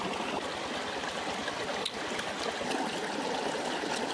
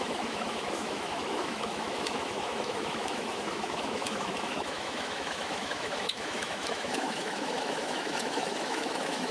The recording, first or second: first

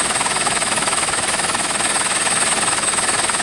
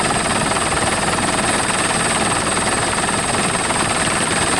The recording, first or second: second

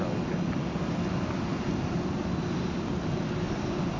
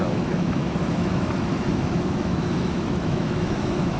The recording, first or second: first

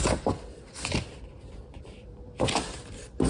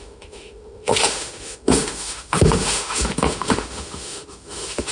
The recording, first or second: first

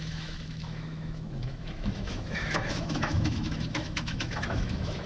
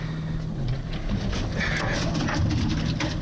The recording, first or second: second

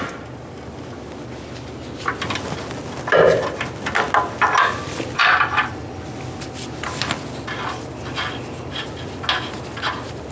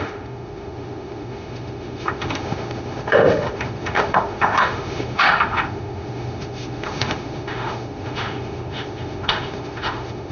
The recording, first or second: first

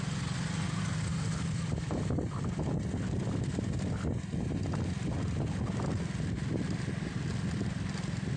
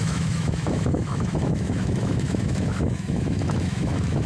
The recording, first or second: first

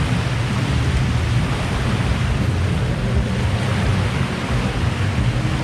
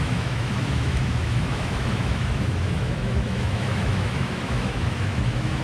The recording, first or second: first